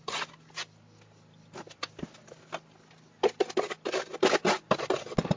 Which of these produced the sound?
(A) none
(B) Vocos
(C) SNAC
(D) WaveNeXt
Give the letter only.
A